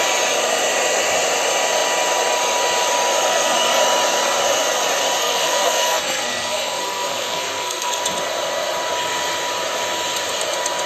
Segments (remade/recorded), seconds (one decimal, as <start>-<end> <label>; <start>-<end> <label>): 0.0-3.3 recorded; 3.3-3.8 remade; 3.8-5.2 recorded; 5.2-8.0 remade; 8.0-10.9 recorded